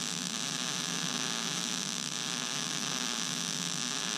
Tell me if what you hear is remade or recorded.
recorded